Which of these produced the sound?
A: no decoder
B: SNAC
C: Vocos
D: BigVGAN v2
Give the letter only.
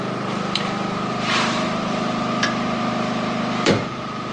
D